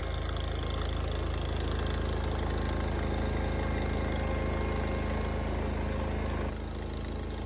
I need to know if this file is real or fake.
real